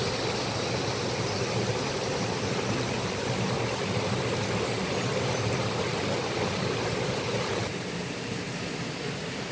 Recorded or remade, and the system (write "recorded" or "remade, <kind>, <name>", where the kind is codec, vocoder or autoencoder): recorded